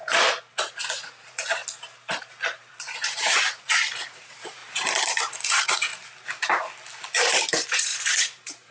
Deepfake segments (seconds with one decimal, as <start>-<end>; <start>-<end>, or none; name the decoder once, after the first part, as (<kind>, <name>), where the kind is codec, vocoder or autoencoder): 0.0-1.6 (vocoder, Vocos); 2.7-4.6; 5.1-5.9; 7.5-8.7